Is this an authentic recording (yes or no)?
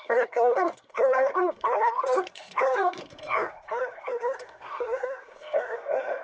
no